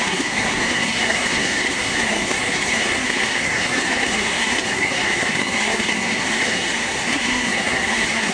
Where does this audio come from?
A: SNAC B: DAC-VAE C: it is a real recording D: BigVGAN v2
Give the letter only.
A